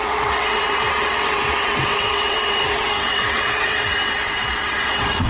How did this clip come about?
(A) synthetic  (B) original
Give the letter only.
A